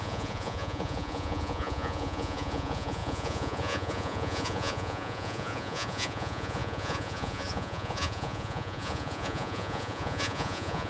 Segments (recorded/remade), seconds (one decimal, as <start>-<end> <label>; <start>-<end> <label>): 0.0-10.9 remade